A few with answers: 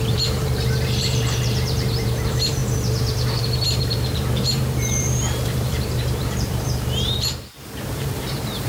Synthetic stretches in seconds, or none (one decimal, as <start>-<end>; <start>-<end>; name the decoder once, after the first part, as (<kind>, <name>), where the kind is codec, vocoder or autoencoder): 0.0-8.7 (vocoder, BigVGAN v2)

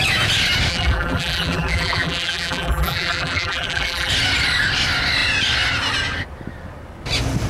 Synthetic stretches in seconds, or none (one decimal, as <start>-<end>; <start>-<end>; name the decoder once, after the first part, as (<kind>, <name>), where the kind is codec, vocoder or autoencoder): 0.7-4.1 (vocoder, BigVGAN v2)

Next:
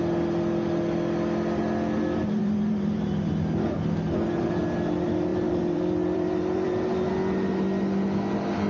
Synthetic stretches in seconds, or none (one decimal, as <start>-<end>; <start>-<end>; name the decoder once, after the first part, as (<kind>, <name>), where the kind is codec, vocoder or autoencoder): 2.4-3.3 (vocoder, BigVGAN v2); 5.3-7.1

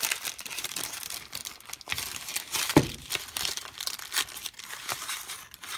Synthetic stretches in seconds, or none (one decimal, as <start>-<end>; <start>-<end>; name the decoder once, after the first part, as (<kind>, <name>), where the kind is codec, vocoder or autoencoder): 0.0-1.4 (vocoder, BigVGAN v2); 4.9-5.8